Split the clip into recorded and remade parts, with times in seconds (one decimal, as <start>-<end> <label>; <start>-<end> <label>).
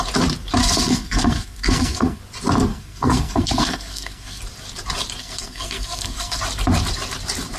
0.0-0.6 recorded; 0.6-2.2 remade; 2.2-2.7 recorded; 2.7-4.4 remade; 4.4-5.2 recorded; 5.2-6.4 remade; 6.4-7.6 recorded